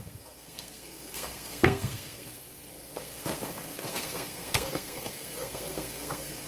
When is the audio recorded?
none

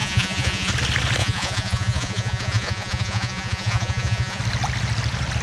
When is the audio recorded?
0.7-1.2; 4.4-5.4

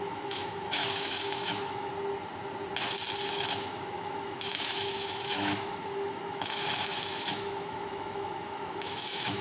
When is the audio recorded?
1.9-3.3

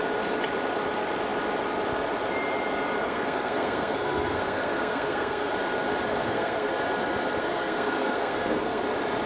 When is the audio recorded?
0.0-3.0; 5.5-6.1; 6.7-7.4; 8.8-9.3